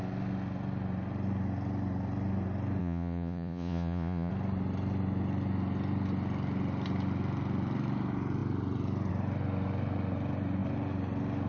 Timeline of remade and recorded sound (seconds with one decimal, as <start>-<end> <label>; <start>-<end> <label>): 0.0-2.8 recorded; 2.8-4.3 remade; 4.3-11.5 recorded